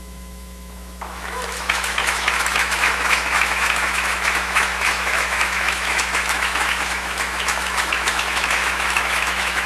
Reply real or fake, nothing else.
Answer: fake